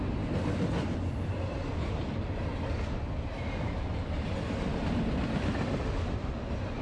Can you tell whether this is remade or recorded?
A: recorded